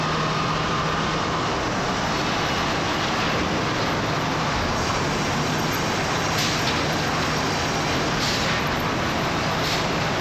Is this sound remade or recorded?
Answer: recorded